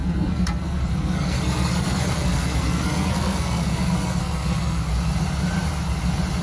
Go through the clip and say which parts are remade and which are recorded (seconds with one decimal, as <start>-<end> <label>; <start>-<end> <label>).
0.0-4.9 remade; 4.9-6.4 recorded